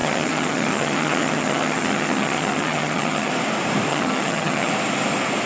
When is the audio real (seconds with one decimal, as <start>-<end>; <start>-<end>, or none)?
3.3-3.9; 4.7-5.5